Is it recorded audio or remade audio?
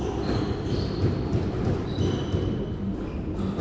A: recorded